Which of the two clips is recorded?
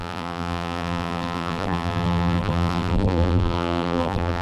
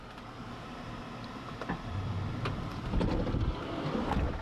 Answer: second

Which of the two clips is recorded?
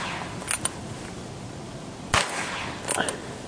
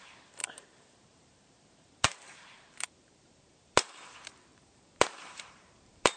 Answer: first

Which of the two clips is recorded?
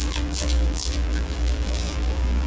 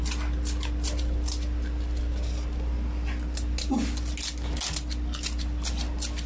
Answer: second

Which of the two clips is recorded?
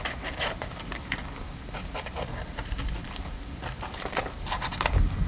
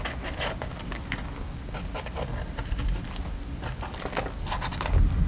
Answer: second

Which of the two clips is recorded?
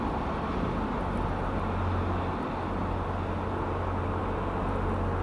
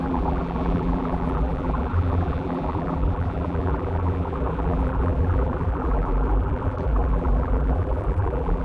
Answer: first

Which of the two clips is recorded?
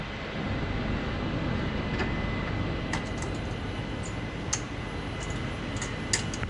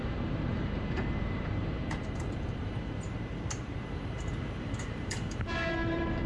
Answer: first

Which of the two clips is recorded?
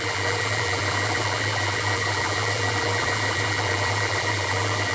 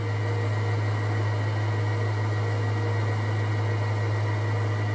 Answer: second